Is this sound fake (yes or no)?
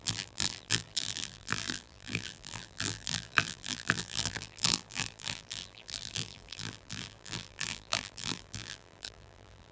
yes